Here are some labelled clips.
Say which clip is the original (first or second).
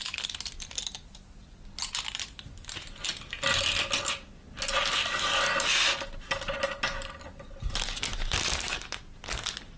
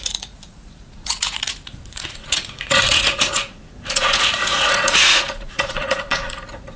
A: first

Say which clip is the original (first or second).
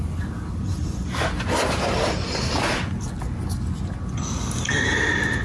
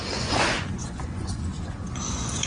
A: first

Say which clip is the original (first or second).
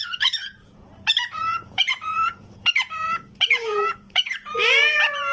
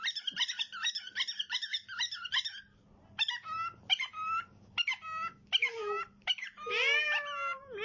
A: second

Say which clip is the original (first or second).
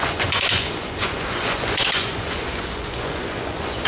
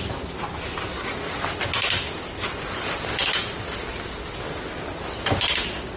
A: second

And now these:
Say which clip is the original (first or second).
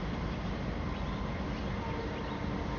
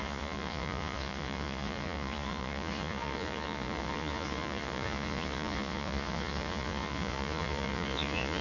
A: first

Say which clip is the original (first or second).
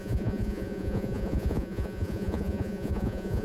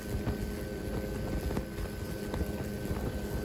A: second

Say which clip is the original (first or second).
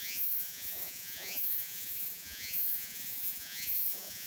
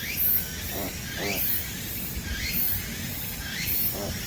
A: second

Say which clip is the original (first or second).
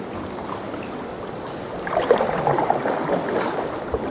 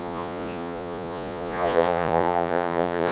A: first